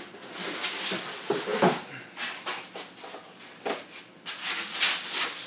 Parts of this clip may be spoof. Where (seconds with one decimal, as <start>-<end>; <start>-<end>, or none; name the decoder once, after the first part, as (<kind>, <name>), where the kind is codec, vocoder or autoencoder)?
none